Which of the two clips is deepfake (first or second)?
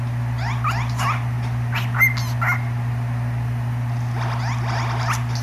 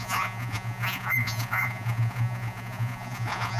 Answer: second